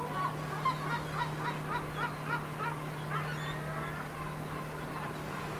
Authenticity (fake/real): real